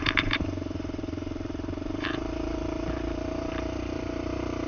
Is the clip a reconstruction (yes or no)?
yes